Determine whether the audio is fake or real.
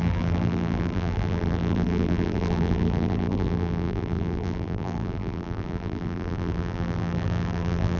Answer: fake